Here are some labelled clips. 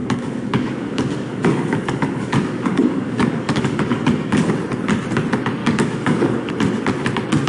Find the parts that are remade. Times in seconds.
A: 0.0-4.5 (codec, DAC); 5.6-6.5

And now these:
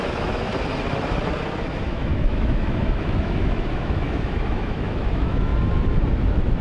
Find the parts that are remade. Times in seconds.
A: 0.0-0.5 (autoencoder, DAC-VAE); 1.7-5.5

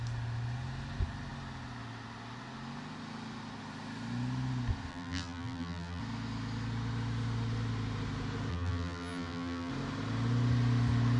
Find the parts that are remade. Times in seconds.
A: 4.9-6.0 (vocoder, BigVGAN v2); 8.5-9.7